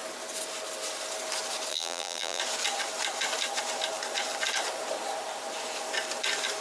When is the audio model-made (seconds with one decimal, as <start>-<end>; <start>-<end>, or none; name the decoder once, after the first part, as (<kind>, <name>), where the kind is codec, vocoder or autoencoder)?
1.7-2.4 (vocoder, BigVGAN v2)